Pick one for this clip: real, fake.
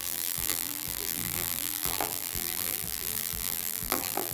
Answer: fake